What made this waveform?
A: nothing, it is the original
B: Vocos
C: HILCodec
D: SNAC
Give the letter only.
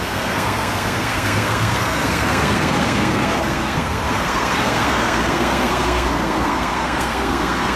D